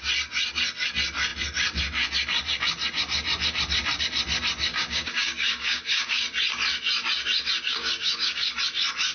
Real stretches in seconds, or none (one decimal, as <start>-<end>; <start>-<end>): 0.0-4.7; 6.2-7.7; 8.5-9.1